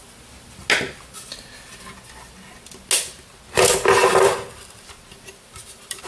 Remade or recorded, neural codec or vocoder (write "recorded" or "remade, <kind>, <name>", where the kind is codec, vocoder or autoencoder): recorded